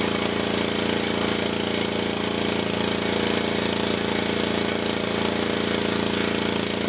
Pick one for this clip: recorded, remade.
recorded